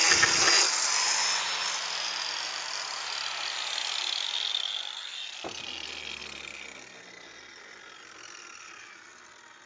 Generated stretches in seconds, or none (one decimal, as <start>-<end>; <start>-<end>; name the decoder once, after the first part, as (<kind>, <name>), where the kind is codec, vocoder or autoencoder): none